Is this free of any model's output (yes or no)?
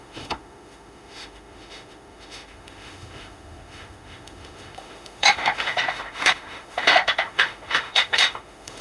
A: no